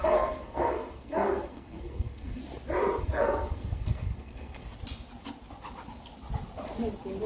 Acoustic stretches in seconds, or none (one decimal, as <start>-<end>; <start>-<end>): 2.4-3.0; 4.7-7.3